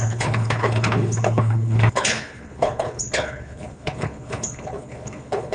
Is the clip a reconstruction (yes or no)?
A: yes